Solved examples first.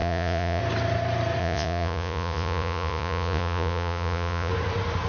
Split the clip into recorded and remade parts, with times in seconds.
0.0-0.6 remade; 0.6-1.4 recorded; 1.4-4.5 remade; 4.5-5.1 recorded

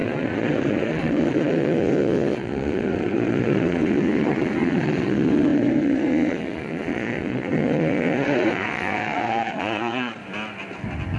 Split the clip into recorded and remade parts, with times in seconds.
0.0-10.2 remade; 10.2-11.2 recorded

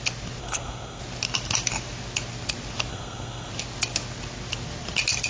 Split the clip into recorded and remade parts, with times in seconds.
0.0-0.4 recorded; 0.4-1.0 remade; 1.0-2.9 recorded; 2.9-3.5 remade; 3.5-5.3 recorded

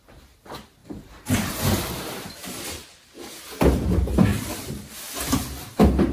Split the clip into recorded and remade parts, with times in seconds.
0.0-0.8 recorded; 0.8-3.0 remade; 3.0-4.3 recorded; 4.3-4.9 remade; 4.9-6.1 recorded

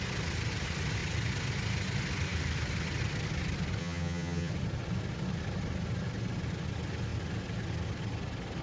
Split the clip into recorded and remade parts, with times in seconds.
0.0-3.8 recorded; 3.8-4.5 remade; 4.5-8.6 recorded

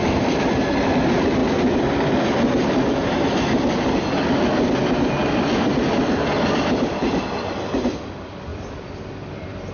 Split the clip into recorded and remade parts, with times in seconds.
0.0-1.4 recorded; 1.4-3.9 remade; 3.9-5.2 recorded; 5.2-7.7 remade; 7.7-8.5 recorded; 8.5-9.7 remade

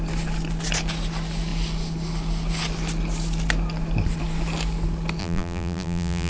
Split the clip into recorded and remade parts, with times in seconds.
0.0-5.2 recorded; 5.2-6.3 remade

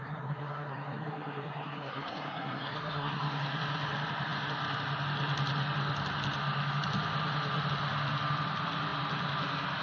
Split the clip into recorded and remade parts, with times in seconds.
0.0-3.2 remade; 3.2-9.8 recorded